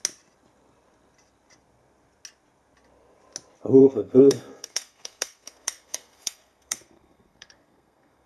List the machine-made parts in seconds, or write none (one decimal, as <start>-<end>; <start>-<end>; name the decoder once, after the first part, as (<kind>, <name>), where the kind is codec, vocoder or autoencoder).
3.8-8.3 (codec, SNAC)